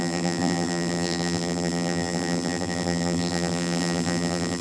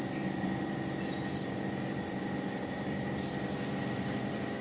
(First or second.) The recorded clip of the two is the second